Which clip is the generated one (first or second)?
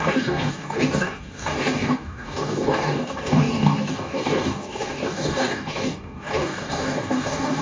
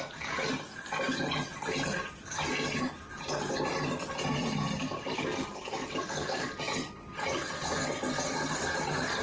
first